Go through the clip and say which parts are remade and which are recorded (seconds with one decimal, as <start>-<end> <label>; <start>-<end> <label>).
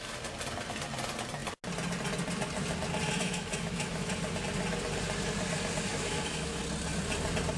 0.0-3.2 recorded; 3.2-4.1 remade; 4.1-5.9 recorded; 5.9-6.6 remade; 6.6-7.6 recorded